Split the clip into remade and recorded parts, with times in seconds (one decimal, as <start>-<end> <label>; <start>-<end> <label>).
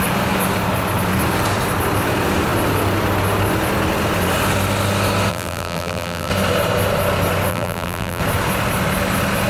0.0-5.3 recorded; 5.3-6.3 remade; 6.3-7.5 recorded; 7.5-8.2 remade; 8.2-9.5 recorded